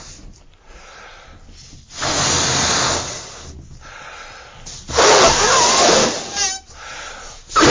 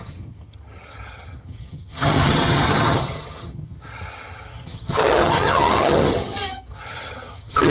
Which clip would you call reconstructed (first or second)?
second